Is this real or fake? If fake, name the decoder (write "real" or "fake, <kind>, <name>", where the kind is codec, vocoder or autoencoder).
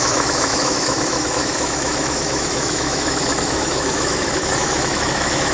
fake, autoencoder, DAC-VAE